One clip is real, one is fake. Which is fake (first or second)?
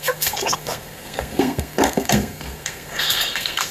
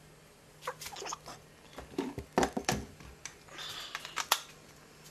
first